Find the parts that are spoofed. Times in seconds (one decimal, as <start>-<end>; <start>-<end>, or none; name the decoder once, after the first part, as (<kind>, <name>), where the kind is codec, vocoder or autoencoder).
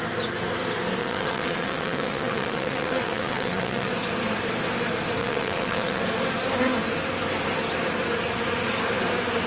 1.0-3.9 (vocoder, WaveNeXt); 5.2-6.0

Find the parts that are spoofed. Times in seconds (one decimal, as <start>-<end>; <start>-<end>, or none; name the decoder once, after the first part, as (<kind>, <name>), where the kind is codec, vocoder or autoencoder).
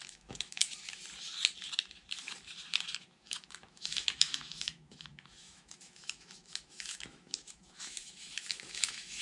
0.0-0.6 (autoencoder, DAC-VAE); 3.0-9.2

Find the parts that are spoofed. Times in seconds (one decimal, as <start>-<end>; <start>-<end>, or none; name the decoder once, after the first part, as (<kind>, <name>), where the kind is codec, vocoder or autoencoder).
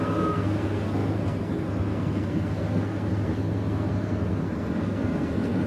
0.0-5.7 (codec, SNAC)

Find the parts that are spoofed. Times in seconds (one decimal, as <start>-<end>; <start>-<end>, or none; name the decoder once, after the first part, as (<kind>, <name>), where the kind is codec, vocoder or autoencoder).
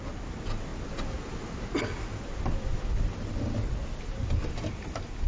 none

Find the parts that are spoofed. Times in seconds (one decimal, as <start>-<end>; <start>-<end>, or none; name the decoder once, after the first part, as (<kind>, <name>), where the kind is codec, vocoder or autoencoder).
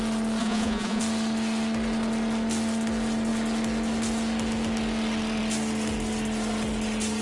0.4-1.0 (vocoder, Vocos)